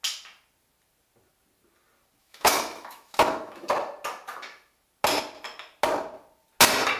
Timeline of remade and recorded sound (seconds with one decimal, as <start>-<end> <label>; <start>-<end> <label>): 0.0-2.2 recorded; 2.2-3.7 remade; 3.7-7.0 recorded